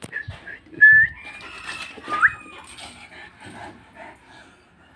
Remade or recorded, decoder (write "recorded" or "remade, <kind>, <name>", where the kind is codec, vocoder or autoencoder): recorded